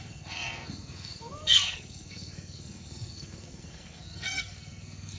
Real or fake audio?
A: fake